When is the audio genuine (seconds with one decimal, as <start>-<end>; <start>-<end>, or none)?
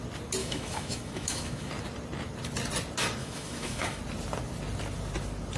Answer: 0.0-0.4; 1.7-3.2; 4.0-5.6